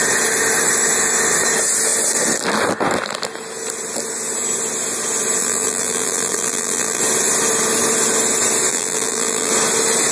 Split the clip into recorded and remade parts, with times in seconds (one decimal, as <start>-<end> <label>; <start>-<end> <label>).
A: 0.0-5.4 recorded; 5.4-7.0 remade; 7.0-8.7 recorded; 8.7-9.5 remade; 9.5-10.1 recorded